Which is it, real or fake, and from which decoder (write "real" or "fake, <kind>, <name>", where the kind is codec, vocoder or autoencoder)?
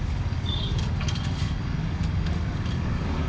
fake, codec, DAC